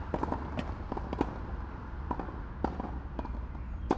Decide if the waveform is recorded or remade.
recorded